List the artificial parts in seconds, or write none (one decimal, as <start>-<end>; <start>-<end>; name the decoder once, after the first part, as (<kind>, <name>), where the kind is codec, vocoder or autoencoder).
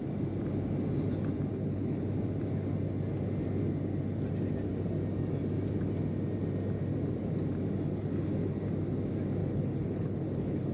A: 1.5-2.0 (codec, HILCodec); 9.4-10.7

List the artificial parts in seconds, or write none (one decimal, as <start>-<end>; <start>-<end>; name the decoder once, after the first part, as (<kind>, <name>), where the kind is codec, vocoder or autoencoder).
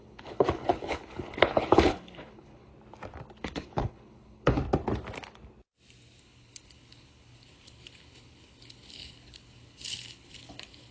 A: 0.0-2.7 (codec, HILCodec); 3.4-4.6; 6.2-10.9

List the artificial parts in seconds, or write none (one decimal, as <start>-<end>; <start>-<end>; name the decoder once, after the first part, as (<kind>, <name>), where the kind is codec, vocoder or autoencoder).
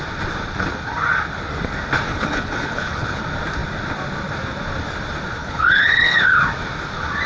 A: 2.1-3.2 (codec, HILCodec); 5.4-6.2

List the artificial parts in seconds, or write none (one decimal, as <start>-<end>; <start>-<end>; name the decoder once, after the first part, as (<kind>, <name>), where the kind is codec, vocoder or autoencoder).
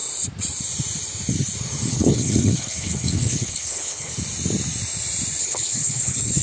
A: 1.9-4.1 (codec, HILCodec); 5.4-6.4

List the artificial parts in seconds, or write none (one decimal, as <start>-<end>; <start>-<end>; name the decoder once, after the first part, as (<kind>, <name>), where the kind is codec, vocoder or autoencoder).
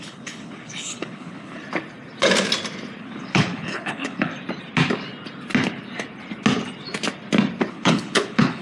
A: 0.0-1.6 (codec, HILCodec); 3.0-4.3; 7.7-8.6